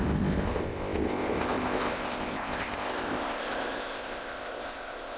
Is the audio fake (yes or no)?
yes